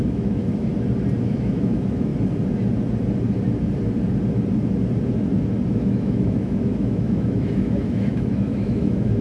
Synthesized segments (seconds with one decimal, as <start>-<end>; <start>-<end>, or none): 0.0-0.7; 1.2-2.1; 5.7-9.2